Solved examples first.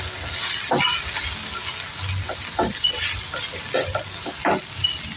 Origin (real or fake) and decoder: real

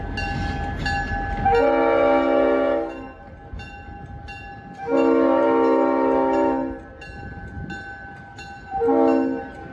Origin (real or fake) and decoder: real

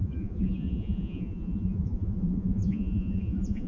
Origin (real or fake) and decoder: fake, vocoder, Vocos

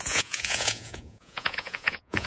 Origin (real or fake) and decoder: fake, vocoder, Vocos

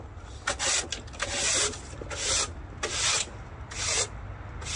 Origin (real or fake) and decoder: real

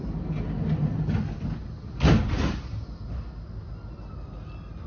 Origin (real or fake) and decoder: real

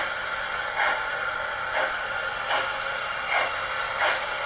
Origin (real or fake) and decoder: real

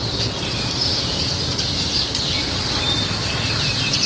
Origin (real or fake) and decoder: real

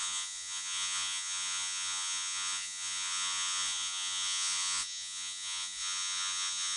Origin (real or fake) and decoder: fake, vocoder, Vocos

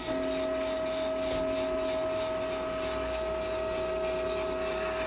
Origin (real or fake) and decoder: real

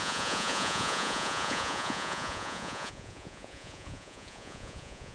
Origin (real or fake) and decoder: fake, vocoder, Vocos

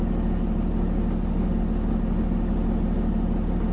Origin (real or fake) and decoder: real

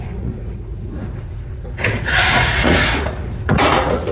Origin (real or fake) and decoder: fake, vocoder, Vocos